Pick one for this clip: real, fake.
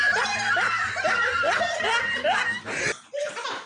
real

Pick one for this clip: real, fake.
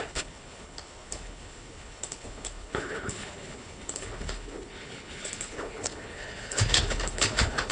fake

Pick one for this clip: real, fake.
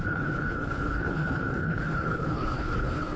fake